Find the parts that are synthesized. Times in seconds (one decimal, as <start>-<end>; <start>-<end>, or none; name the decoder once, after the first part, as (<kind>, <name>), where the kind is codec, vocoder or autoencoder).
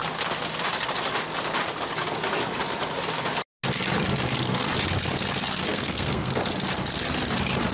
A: 5.7-6.3 (codec, SNAC)